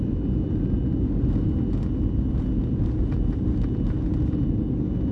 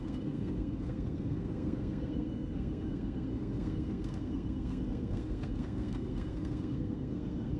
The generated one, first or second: second